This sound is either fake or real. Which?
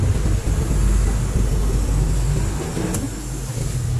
real